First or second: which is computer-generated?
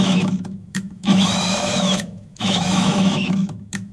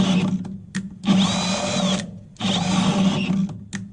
first